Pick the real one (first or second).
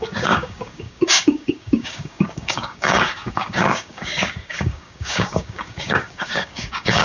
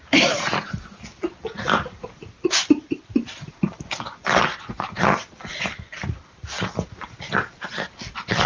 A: second